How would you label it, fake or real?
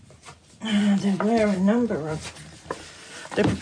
fake